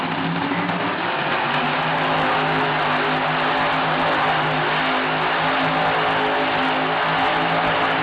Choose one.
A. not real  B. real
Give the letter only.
B